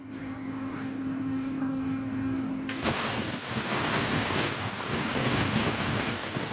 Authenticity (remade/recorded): remade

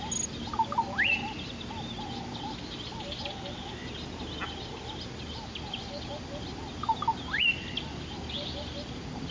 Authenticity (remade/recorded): recorded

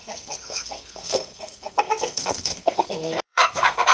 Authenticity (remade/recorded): remade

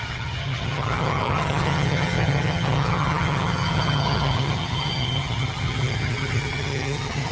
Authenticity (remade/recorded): remade